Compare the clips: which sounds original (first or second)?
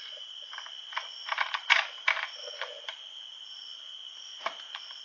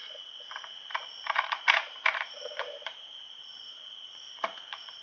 first